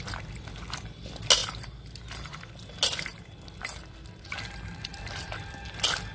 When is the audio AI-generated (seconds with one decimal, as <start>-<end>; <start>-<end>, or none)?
none